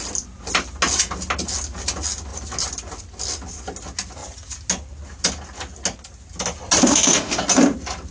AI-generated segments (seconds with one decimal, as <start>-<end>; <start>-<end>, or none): 6.8-7.4